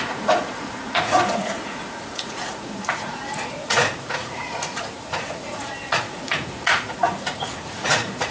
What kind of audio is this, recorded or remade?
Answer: remade